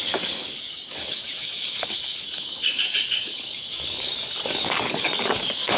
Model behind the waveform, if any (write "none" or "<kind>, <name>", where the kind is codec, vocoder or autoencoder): codec, DAC